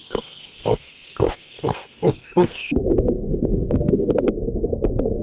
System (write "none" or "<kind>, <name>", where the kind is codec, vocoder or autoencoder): codec, SNAC